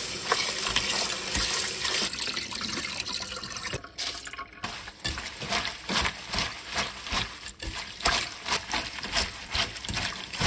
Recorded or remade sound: remade